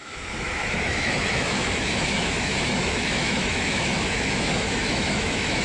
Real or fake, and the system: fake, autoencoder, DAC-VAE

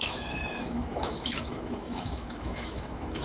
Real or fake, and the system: fake, autoencoder, DAC-VAE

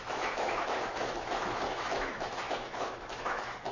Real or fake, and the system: fake, autoencoder, DAC-VAE